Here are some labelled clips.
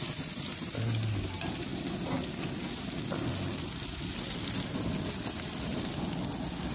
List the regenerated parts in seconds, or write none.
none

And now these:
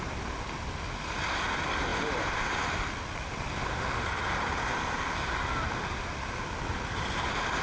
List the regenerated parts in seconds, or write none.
none

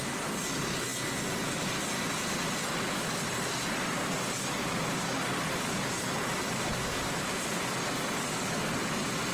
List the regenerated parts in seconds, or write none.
none

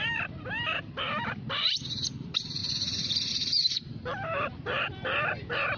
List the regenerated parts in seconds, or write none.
0.0-2.6 (vocoder, BigVGAN v2); 3.3-5.8

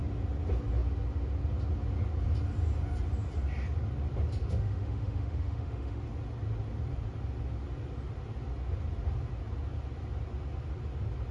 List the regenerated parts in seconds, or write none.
4.4-6.0 (autoencoder, DAC-VAE)

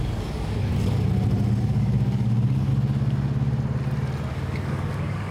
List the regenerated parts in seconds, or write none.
0.0-0.7 (codec, DAC); 1.6-2.7; 4.3-5.3

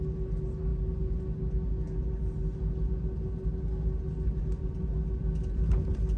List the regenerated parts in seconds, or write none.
none